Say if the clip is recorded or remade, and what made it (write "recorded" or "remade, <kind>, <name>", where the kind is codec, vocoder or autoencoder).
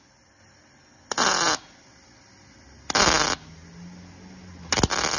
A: recorded